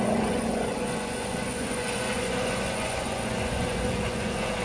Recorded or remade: remade